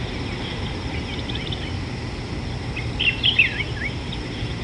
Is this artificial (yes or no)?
no